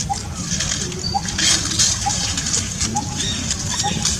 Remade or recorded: recorded